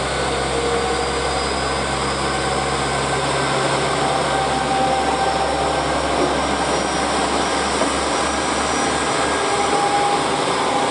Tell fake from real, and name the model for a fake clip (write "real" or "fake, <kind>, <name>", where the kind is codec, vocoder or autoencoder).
real